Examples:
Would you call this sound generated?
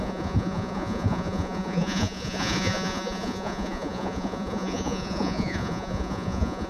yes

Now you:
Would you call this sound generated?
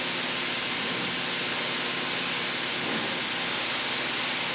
no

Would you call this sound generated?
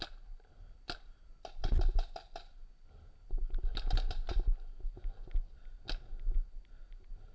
no